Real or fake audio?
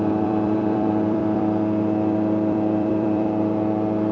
fake